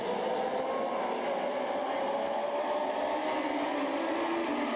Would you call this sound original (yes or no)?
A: yes